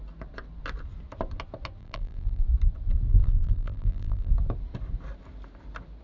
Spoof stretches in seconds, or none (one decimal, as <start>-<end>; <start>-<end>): 1.8-2.4; 3.1-4.3